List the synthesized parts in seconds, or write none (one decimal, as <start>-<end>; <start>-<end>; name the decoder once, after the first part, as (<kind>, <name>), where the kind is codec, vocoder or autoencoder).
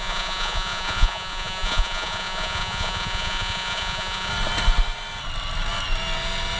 0.0-4.3 (vocoder, Vocos)